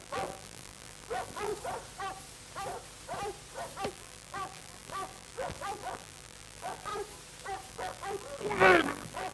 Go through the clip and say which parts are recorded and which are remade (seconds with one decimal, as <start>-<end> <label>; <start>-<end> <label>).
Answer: 0.0-1.5 remade; 1.5-3.9 recorded; 3.9-6.9 remade; 6.9-7.7 recorded; 7.7-9.3 remade